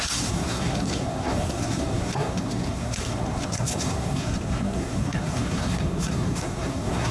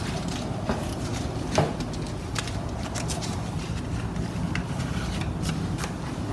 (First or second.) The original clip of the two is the second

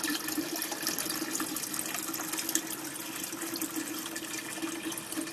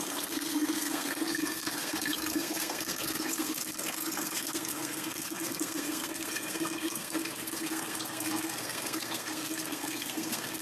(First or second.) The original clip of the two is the first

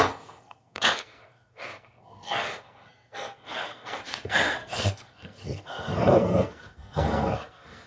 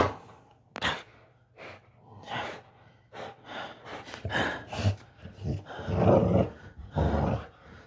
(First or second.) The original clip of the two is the second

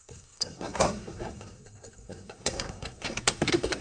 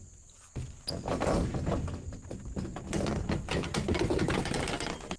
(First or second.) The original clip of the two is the second